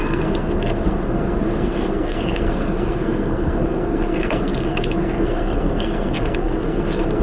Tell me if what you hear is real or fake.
fake